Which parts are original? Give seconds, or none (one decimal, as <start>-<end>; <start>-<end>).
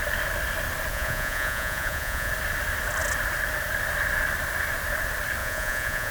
0.0-0.9; 2.3-5.4